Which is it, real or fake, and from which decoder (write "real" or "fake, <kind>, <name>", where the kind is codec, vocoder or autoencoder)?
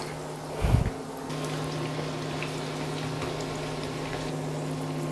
real